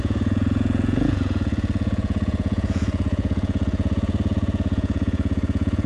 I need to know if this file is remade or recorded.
remade